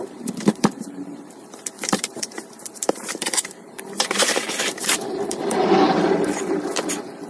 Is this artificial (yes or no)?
yes